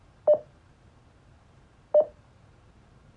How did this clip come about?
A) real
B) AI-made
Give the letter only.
B